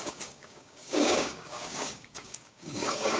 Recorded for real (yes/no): no